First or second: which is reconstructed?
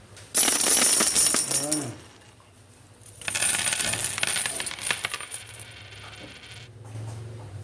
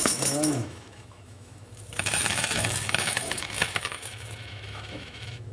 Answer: second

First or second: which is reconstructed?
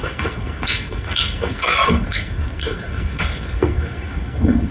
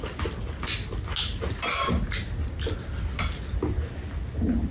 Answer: first